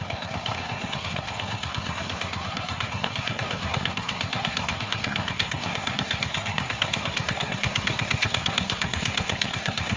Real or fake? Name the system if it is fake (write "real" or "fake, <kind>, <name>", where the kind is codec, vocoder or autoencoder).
fake, codec, SNAC